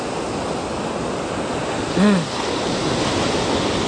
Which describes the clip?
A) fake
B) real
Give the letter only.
B